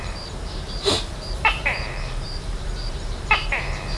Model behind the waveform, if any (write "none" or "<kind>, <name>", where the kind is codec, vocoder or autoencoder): vocoder, BigVGAN v2